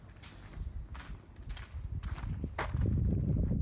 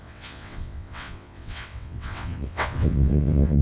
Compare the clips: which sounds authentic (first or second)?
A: first